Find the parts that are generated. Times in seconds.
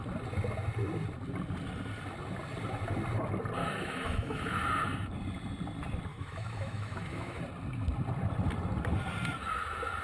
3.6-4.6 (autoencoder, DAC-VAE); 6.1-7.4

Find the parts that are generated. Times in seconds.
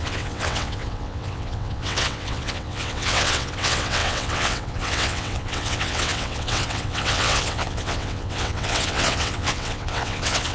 0.0-10.5 (vocoder, WaveNeXt)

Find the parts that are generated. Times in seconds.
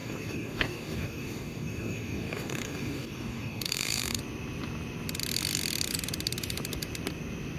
0.0-4.2 (codec, DAC)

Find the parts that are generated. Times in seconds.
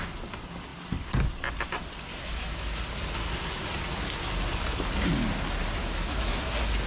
2.1-2.8 (autoencoder, DAC-VAE); 5.8-6.4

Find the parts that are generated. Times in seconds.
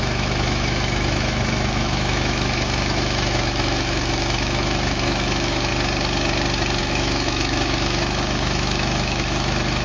0.0-5.7 (autoencoder, DAC-VAE); 6.8-9.8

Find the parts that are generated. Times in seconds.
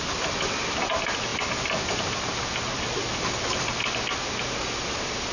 none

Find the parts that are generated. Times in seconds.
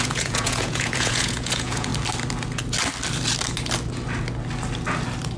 0.0-1.9 (vocoder, Vocos)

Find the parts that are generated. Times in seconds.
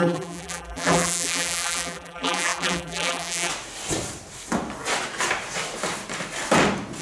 0.0-3.5 (vocoder, BigVGAN v2)